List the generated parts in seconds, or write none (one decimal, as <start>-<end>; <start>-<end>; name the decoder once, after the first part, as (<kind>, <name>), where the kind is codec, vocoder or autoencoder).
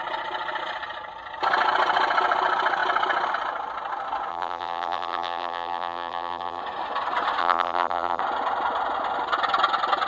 4.3-6.6 (vocoder, BigVGAN v2); 7.4-8.2